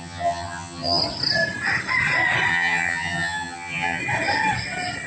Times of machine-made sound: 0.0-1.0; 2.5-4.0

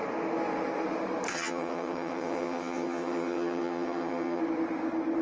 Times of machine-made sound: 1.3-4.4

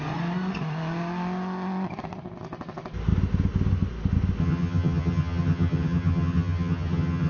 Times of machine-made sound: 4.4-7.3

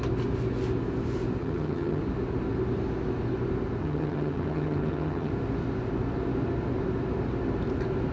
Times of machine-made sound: 1.4-2.0; 3.8-5.3

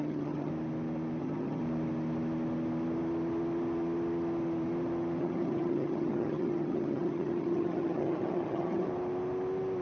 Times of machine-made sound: 0.0-0.5; 1.2-1.6; 5.2-8.9

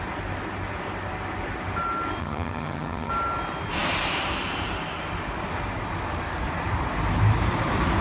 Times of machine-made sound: 2.2-3.1